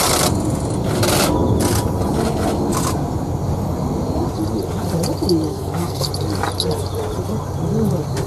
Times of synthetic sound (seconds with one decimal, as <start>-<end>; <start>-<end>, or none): 5.5-6.1